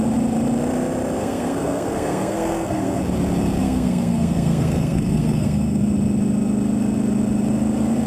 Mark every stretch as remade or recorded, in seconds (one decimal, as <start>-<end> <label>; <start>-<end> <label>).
0.0-1.2 recorded; 1.2-3.0 remade; 3.0-3.6 recorded; 3.6-5.9 remade; 5.9-8.1 recorded